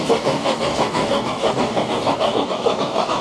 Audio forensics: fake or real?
fake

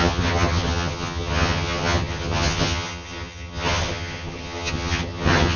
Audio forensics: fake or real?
fake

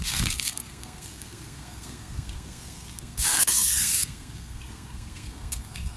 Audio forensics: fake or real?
fake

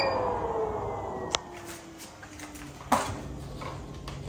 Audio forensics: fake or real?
real